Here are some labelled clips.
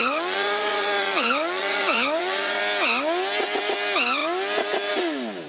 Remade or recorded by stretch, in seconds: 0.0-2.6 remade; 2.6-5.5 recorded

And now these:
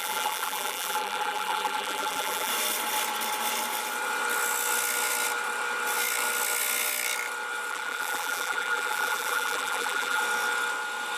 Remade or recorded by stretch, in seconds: 0.0-2.5 remade; 2.5-7.7 recorded; 7.7-10.2 remade; 10.2-11.2 recorded

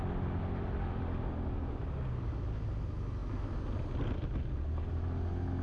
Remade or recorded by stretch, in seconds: 0.0-5.6 recorded

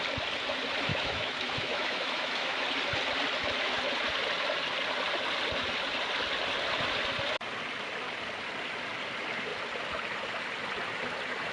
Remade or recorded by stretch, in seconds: 0.0-0.9 recorded; 0.9-2.6 remade; 2.6-11.5 recorded

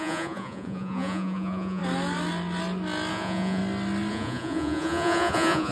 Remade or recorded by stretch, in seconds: 0.0-1.8 remade; 1.8-3.1 recorded; 3.1-3.6 remade; 3.6-4.1 recorded; 4.1-5.7 remade

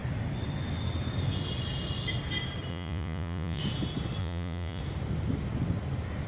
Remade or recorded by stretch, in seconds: 0.0-2.7 recorded; 2.7-3.6 remade; 3.6-4.2 recorded; 4.2-4.8 remade; 4.8-6.3 recorded

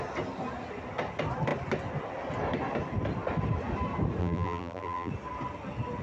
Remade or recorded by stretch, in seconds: 0.0-4.2 recorded; 4.2-5.1 remade; 5.1-6.0 recorded

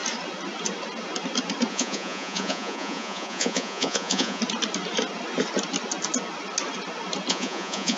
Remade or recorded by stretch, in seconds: 0.0-1.7 recorded; 1.7-4.4 remade; 4.4-7.3 recorded; 7.3-8.0 remade